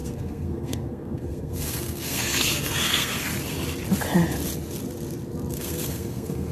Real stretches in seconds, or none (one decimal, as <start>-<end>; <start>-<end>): 3.3-5.5